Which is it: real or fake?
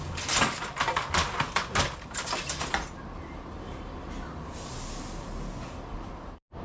real